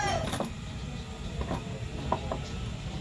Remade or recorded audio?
recorded